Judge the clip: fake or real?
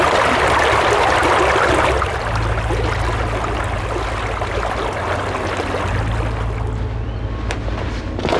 real